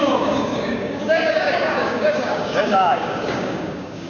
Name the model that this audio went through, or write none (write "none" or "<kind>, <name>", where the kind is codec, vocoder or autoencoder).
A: codec, DAC